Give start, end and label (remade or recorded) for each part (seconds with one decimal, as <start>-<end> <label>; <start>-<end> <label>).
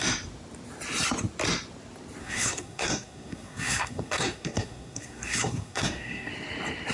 0.0-2.2 recorded; 2.2-6.3 remade; 6.3-6.9 recorded